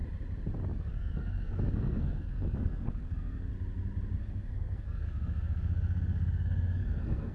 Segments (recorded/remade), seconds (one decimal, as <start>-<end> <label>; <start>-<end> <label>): 0.0-0.8 recorded; 0.8-3.5 remade; 3.5-4.2 recorded; 4.2-7.3 remade